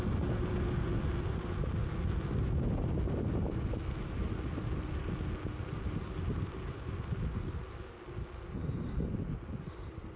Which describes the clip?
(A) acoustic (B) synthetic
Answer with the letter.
A